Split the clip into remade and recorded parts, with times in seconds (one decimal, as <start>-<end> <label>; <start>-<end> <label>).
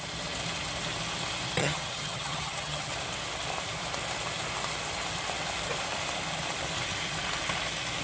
0.0-1.6 recorded; 1.6-2.9 remade; 2.9-8.0 recorded